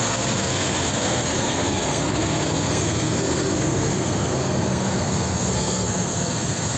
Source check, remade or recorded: remade